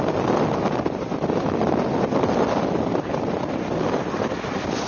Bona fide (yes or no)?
yes